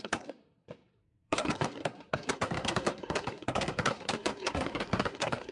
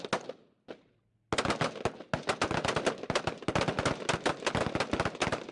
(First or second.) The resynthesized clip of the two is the first